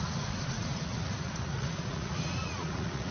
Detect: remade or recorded remade